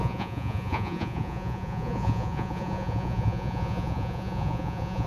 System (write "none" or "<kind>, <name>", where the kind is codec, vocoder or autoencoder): vocoder, Vocos